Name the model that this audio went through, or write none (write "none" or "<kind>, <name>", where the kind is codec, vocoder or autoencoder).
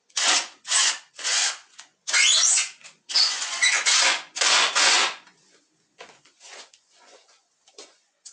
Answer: vocoder, Vocos